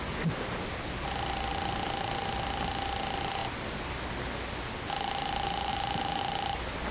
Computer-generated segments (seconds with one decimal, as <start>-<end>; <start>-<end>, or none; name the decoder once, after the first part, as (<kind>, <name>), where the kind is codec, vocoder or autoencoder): none